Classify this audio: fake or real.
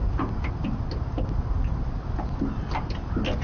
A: real